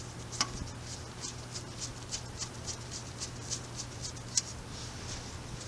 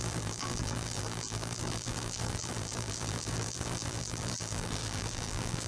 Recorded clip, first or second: first